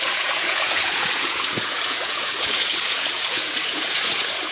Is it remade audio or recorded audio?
remade